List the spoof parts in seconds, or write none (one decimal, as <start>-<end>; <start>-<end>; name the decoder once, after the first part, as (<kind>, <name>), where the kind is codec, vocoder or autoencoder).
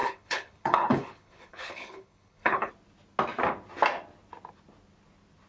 0.0-2.7 (codec, HILCodec)